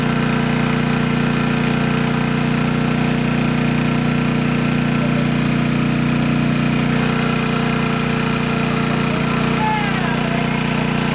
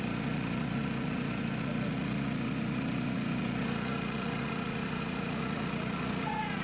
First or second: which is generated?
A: second